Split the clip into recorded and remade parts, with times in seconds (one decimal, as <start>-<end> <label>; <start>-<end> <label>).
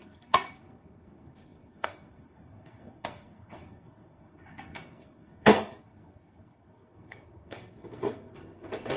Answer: 0.0-9.0 remade